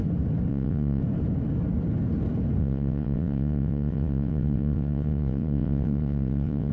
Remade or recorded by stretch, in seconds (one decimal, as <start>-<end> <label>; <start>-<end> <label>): 0.0-0.5 recorded; 0.5-1.0 remade; 1.0-2.6 recorded; 2.6-6.7 remade